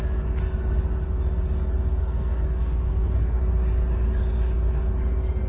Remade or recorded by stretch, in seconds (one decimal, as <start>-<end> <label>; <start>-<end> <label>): 0.0-2.0 recorded; 2.0-3.4 remade; 3.4-5.5 recorded